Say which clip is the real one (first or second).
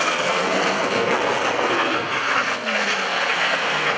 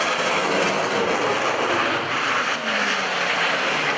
second